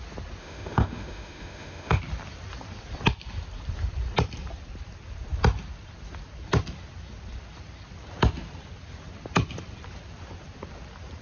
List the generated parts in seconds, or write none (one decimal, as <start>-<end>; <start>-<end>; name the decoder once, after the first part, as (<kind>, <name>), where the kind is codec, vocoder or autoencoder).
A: 0.4-2.0 (autoencoder, DAC-VAE)